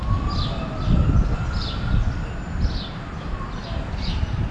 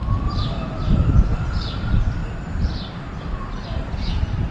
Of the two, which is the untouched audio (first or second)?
first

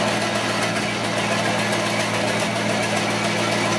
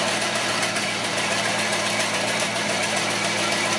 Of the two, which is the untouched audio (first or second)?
first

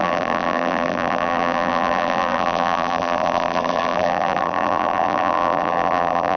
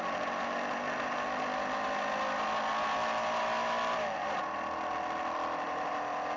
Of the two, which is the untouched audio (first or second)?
second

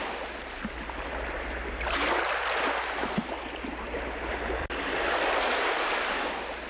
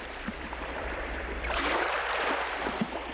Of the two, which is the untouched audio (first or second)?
first